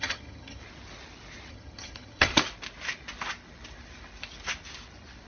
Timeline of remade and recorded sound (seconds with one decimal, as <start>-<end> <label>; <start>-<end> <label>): 0.0-0.6 remade; 0.6-1.5 recorded; 1.5-2.3 remade; 2.3-5.3 recorded